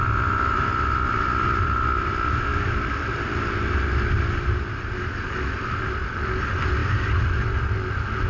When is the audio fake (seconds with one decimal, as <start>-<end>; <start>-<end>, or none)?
0.0-8.3